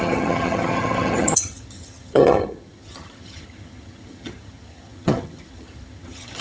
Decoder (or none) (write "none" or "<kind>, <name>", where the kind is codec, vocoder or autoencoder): vocoder, HiFi-GAN